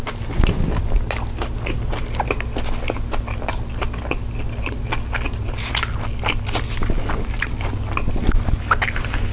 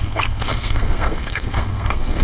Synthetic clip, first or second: second